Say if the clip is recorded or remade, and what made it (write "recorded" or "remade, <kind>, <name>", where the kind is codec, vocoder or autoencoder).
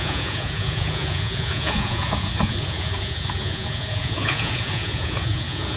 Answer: remade, vocoder, Vocos